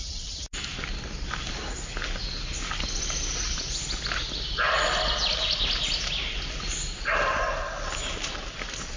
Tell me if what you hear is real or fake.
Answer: real